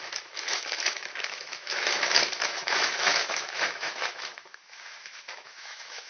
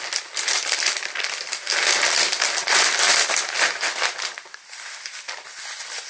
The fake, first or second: first